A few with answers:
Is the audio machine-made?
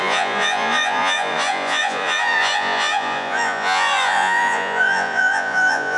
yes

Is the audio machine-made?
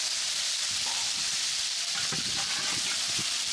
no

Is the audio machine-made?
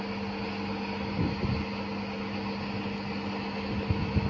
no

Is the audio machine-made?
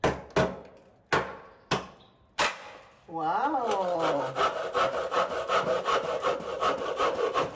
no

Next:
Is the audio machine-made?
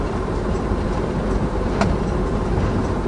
yes